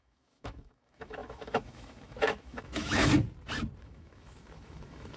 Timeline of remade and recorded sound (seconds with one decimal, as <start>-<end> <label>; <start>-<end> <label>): 0.0-3.1 remade; 3.1-3.8 recorded; 3.8-5.2 remade